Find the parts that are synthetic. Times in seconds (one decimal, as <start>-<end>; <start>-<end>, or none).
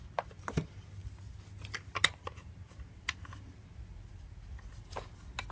none